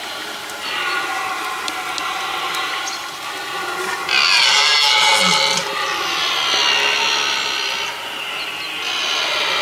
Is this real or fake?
real